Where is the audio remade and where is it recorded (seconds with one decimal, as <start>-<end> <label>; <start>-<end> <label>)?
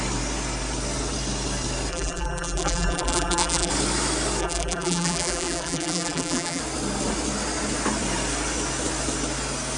0.0-1.9 recorded; 1.9-3.7 remade; 3.7-4.4 recorded; 4.4-6.6 remade; 6.6-9.8 recorded